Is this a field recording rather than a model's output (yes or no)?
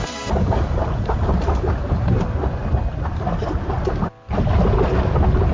yes